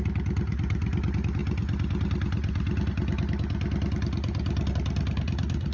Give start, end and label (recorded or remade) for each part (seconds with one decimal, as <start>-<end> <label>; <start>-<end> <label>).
0.0-5.7 recorded